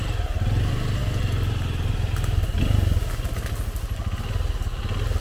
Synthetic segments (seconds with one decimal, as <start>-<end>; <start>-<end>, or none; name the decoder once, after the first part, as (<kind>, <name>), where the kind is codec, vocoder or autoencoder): none